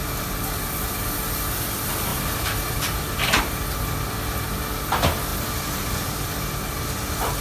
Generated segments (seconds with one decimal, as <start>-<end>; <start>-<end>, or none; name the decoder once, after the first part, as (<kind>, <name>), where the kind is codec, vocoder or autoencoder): 2.1-3.4 (vocoder, BigVGAN v2); 5.3-7.4